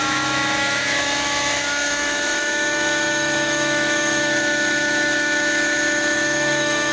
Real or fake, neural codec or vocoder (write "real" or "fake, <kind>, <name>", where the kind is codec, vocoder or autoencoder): fake, autoencoder, DAC-VAE